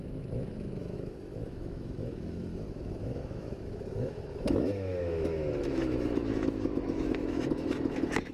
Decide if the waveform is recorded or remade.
remade